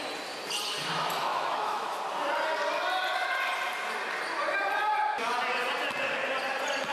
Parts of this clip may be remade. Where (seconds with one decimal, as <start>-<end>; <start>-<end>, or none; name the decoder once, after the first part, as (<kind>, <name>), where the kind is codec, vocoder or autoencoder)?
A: 1.3-2.0 (autoencoder, DAC-VAE)